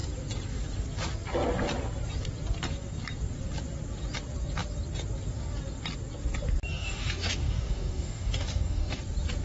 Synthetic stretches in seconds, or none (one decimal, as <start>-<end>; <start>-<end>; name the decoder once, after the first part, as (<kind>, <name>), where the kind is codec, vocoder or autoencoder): 6.7-9.0 (codec, DAC)